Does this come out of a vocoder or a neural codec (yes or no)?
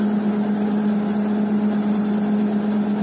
no